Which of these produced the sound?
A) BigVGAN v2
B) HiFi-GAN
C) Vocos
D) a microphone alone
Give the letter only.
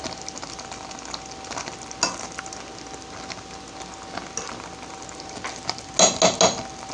D